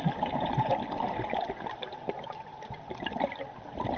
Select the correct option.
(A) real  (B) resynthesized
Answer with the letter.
A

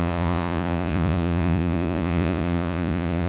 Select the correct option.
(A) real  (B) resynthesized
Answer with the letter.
B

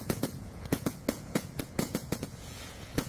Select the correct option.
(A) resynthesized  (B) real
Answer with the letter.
A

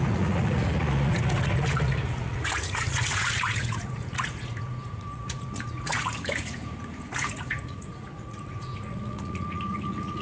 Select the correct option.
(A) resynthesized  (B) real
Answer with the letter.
A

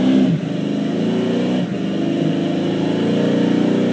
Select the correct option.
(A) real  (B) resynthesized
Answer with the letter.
A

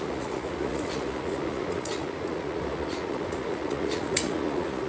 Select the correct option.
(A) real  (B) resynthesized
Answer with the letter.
B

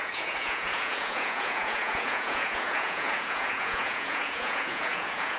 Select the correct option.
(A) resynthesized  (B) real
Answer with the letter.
A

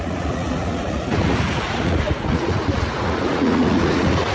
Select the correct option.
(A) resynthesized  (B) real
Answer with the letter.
A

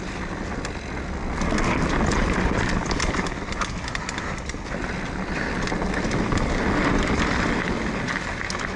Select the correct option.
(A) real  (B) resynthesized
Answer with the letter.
A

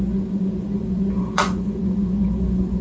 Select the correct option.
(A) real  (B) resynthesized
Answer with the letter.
B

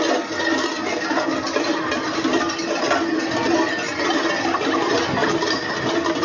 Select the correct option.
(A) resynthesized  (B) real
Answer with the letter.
B